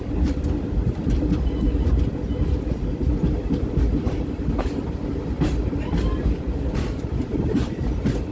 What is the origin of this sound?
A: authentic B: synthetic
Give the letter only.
A